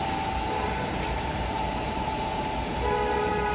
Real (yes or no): no